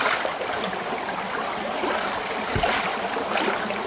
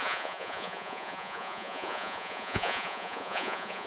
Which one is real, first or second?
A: first